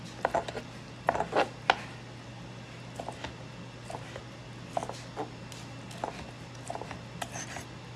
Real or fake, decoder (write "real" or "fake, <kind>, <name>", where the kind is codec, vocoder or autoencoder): real